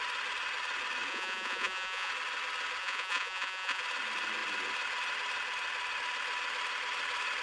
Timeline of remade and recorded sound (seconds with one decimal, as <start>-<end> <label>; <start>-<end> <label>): 0.0-1.1 recorded; 1.1-2.1 remade; 2.1-2.8 recorded; 2.8-3.8 remade; 3.8-7.4 recorded